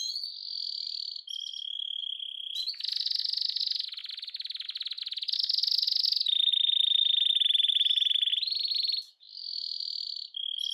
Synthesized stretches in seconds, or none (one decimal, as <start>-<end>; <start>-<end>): none